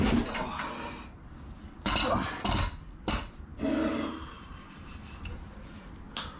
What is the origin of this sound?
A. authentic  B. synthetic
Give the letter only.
A